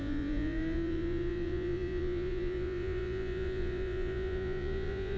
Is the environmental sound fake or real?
fake